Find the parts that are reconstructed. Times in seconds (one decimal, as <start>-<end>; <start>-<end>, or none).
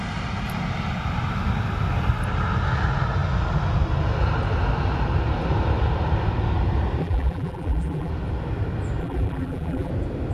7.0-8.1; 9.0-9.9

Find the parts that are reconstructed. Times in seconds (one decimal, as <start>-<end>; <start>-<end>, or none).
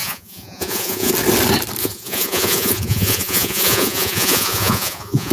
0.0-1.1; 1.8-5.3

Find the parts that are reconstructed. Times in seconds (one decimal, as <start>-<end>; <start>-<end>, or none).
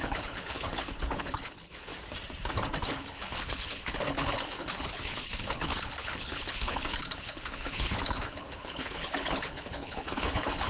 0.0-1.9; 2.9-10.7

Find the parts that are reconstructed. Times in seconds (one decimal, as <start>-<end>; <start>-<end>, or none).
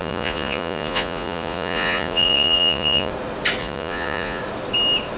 0.0-3.1; 3.6-4.4